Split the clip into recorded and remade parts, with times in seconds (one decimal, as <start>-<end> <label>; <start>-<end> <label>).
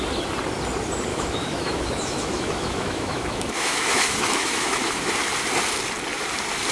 0.0-1.1 recorded; 1.1-5.1 remade; 5.1-6.7 recorded